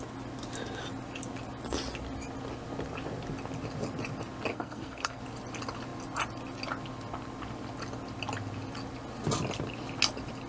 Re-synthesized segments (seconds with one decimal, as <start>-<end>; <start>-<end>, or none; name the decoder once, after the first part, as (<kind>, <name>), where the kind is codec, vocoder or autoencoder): 4.5-5.2 (codec, SNAC)